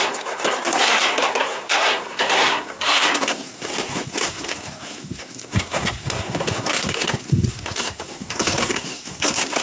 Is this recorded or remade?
remade